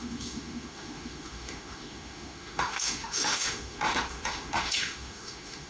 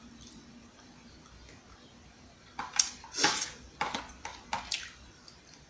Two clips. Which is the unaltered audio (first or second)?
second